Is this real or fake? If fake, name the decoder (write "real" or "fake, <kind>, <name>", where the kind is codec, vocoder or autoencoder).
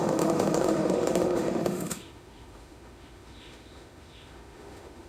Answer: fake, autoencoder, DAC-VAE